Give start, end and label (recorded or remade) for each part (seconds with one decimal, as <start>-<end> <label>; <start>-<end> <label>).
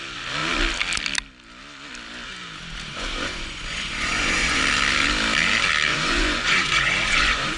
0.0-2.9 recorded; 2.9-4.6 remade; 4.6-5.9 recorded; 5.9-7.6 remade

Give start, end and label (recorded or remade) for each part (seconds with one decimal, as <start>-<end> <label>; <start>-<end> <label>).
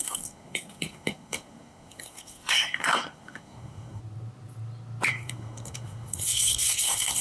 0.0-4.0 remade; 4.0-5.1 recorded; 5.1-7.2 remade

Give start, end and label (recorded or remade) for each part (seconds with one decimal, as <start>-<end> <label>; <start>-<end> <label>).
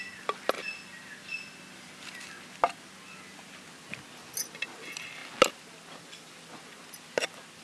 0.0-7.6 recorded